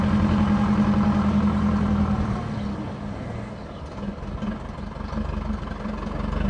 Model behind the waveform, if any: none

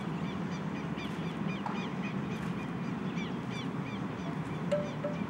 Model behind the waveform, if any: none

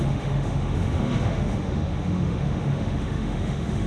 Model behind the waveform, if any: autoencoder, DAC-VAE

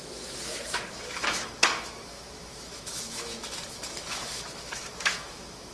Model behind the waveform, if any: autoencoder, DAC-VAE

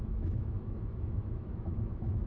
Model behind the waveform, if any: autoencoder, DAC-VAE